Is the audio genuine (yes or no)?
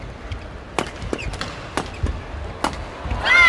yes